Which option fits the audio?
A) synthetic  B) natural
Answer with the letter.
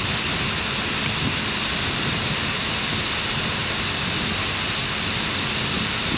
B